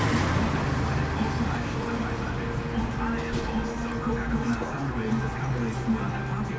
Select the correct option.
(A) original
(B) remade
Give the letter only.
A